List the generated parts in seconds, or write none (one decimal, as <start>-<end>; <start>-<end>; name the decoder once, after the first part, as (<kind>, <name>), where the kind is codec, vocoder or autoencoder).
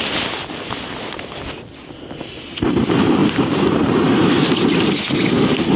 3.2-4.9 (vocoder, BigVGAN v2)